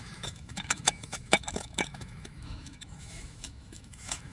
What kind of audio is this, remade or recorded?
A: remade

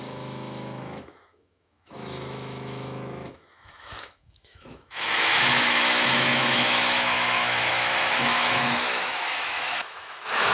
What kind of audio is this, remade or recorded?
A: remade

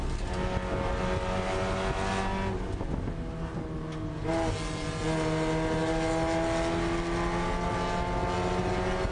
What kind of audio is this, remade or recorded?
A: recorded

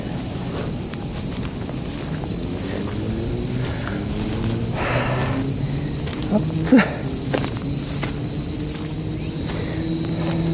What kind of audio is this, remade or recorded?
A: recorded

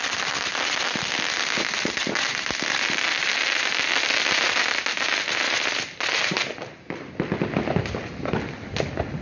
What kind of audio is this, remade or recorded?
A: recorded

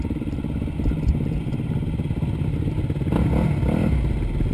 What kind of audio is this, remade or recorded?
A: recorded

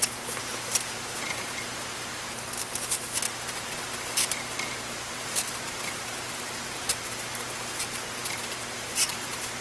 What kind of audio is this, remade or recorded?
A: remade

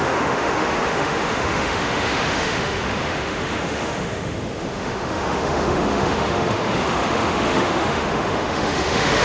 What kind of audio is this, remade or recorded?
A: remade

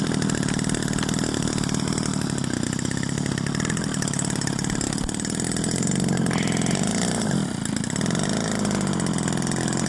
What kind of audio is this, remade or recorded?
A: recorded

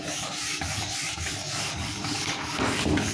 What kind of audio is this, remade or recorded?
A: remade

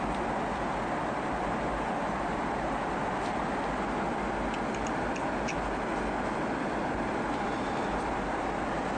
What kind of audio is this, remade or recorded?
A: recorded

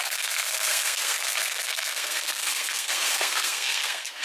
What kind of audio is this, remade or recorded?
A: remade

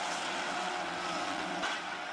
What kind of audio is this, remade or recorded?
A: remade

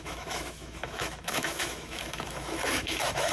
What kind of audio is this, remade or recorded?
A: remade